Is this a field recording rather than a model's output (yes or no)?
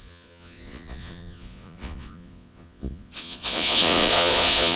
no